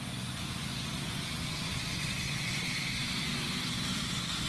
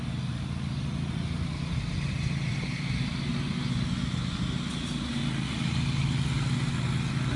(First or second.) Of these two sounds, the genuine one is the second